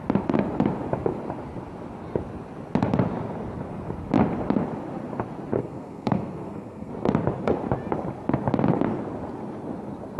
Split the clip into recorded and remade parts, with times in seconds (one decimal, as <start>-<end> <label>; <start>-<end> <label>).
0.0-5.6 recorded; 5.6-6.9 remade; 6.9-10.2 recorded